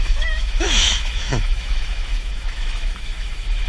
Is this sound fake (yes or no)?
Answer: yes